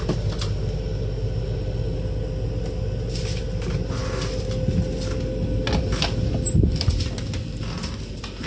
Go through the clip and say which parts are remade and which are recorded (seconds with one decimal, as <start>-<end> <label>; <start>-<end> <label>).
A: 0.0-8.5 recorded